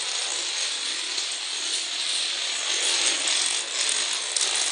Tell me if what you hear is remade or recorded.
recorded